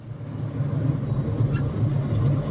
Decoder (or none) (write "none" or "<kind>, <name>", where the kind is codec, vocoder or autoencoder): none